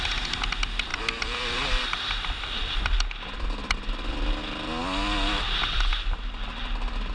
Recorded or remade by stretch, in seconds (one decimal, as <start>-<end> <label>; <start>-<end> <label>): 0.0-0.9 recorded; 0.9-4.2 remade; 4.2-7.1 recorded